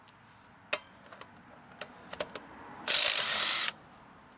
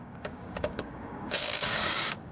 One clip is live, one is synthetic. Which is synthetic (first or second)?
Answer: second